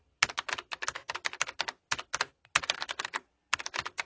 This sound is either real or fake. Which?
real